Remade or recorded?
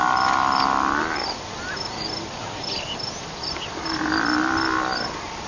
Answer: recorded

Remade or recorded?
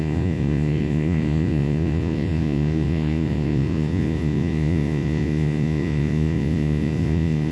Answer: remade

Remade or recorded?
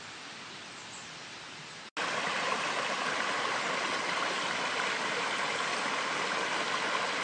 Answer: recorded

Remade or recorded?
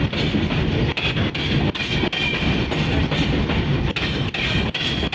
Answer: recorded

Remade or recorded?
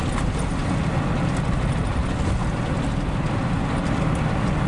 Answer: recorded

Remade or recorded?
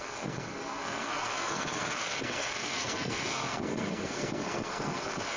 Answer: remade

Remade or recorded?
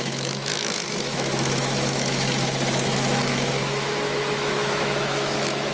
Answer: remade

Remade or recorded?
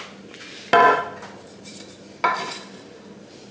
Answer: recorded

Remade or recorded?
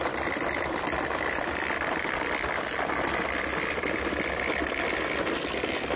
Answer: recorded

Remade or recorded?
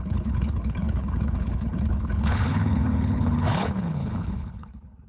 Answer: remade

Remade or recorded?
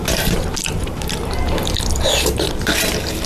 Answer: remade